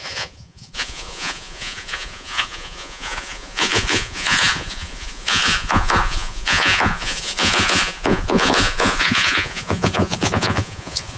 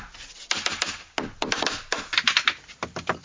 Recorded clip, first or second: second